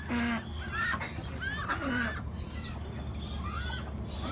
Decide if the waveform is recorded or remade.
recorded